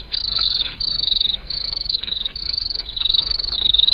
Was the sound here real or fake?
fake